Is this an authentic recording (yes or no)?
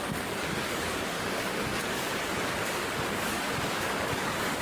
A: no